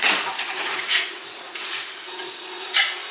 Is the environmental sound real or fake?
fake